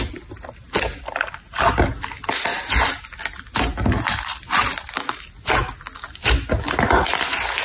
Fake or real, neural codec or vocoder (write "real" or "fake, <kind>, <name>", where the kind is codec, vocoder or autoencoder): real